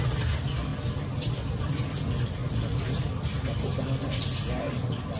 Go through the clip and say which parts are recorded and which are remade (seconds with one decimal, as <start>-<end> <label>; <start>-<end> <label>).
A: 0.0-5.2 recorded

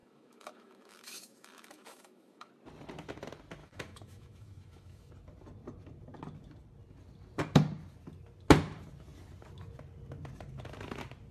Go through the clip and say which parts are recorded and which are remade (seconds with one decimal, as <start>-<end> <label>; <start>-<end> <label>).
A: 0.0-2.5 remade; 2.5-3.6 recorded; 3.6-5.1 remade; 5.1-11.3 recorded

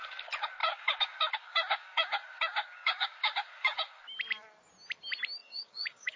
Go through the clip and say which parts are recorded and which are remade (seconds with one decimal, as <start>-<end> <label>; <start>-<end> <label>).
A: 0.0-0.6 recorded; 0.6-4.0 remade; 4.0-5.4 recorded; 5.4-6.2 remade

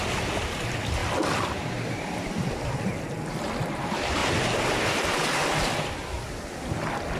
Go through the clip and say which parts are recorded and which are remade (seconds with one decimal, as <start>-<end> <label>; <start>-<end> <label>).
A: 0.0-7.2 recorded